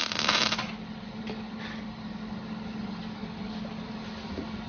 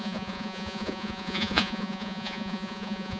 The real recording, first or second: first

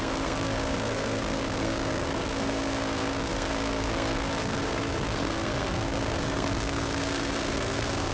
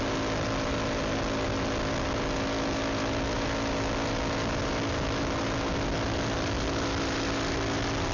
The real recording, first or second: second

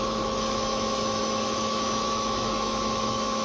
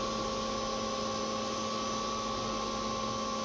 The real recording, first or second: second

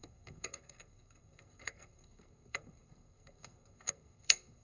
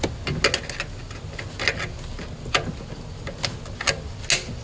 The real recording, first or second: second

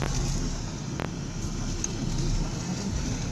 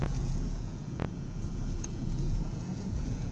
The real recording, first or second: first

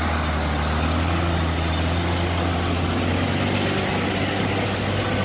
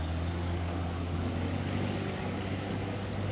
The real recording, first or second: first